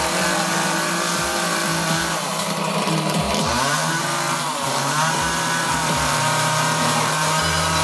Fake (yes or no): yes